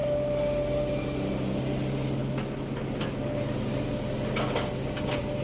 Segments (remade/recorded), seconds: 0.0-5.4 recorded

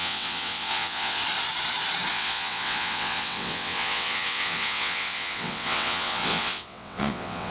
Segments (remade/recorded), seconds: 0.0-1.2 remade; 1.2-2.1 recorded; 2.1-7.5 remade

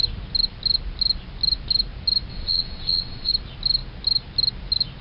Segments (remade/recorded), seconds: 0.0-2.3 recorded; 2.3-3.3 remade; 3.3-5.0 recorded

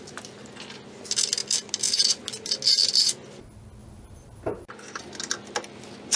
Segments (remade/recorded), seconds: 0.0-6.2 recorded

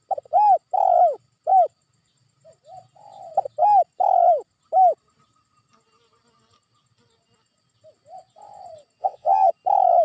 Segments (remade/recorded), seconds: 0.0-9.0 recorded; 9.0-9.5 remade; 9.5-10.0 recorded